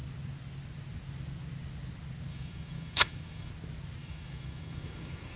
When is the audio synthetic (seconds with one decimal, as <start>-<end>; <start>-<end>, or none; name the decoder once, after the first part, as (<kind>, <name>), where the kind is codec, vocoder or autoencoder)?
2.3-3.5 (autoencoder, DAC-VAE); 4.0-5.4